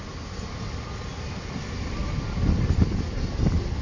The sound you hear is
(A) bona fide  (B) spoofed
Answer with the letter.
A